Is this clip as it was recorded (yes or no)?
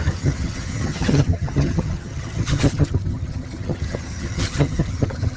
no